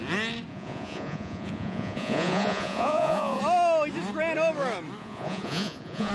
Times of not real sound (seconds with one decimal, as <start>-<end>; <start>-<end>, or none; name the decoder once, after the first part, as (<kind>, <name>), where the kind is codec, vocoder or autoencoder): 0.5-3.4 (vocoder, Vocos); 5.0-6.1